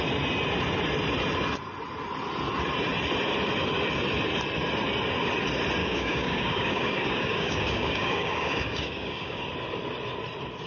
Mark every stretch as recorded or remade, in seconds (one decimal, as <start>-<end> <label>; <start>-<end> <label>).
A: 0.0-5.8 recorded; 5.8-9.4 remade; 9.4-10.7 recorded